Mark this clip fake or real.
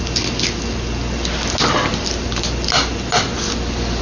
real